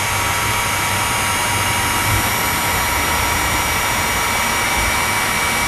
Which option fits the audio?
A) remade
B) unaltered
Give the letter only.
B